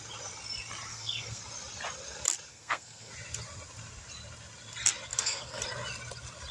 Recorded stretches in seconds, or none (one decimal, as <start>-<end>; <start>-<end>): 0.0-0.9; 1.4-2.5; 3.1-5.1; 5.6-6.5